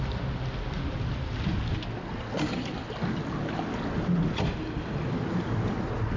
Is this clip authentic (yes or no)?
yes